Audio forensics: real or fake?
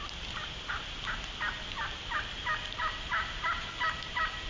real